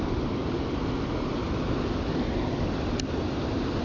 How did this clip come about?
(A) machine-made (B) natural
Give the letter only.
B